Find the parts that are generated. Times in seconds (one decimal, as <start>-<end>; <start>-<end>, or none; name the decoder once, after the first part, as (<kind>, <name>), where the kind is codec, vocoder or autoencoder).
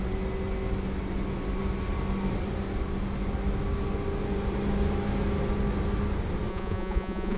6.5-7.4 (vocoder, Vocos)